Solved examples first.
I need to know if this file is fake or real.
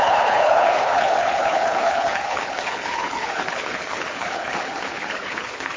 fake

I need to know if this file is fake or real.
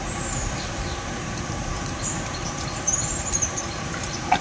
fake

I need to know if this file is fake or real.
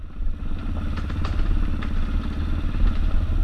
real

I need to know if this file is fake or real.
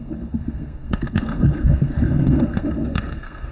fake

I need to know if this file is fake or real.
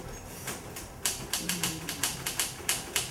real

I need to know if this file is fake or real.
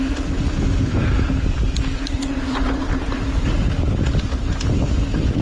real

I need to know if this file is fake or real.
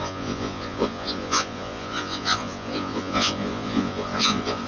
fake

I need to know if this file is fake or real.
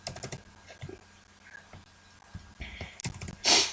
real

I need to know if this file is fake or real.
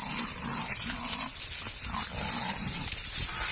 real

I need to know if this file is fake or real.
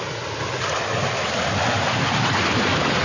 real